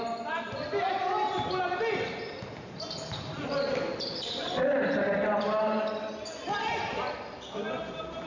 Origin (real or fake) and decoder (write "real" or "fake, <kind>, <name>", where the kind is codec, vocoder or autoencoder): real